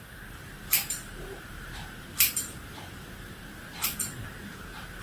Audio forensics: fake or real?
fake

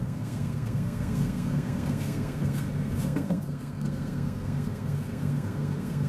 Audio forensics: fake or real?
fake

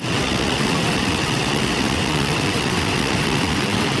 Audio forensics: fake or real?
fake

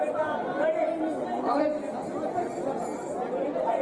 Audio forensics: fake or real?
real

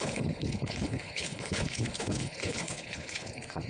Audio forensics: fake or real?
fake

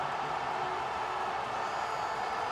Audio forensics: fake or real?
real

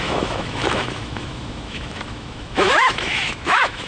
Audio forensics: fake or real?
fake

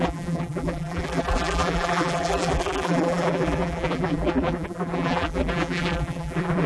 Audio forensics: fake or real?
fake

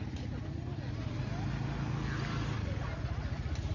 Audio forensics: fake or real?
real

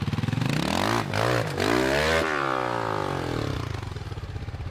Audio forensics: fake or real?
real